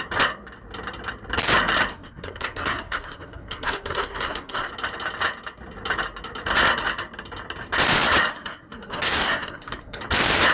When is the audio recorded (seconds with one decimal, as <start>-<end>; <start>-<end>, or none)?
0.0-1.9; 4.7-8.3; 10.0-10.5